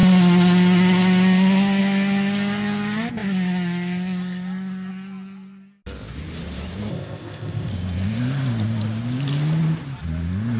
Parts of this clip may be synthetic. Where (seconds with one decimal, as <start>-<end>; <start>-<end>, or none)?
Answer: 6.9-7.7